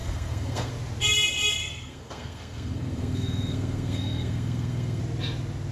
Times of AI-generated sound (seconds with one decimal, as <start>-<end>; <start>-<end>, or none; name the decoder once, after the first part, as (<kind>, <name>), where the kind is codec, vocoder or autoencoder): 0.0-0.7 (codec, SNAC); 1.6-5.0